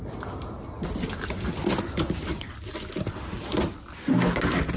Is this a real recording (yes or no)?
yes